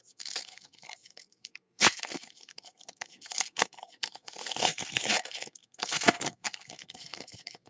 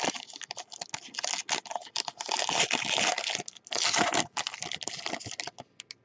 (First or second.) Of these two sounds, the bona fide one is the second